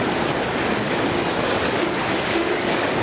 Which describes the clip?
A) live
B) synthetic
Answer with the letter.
B